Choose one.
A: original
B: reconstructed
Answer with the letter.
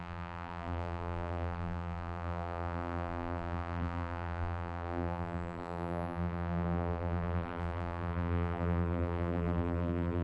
B